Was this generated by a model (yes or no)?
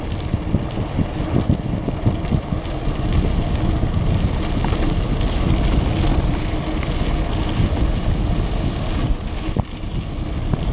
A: no